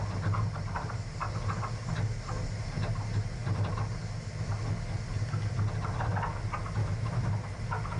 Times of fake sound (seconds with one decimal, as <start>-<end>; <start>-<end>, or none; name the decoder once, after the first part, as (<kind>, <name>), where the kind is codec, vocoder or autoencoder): 6.8-7.3 (autoencoder, DAC-VAE)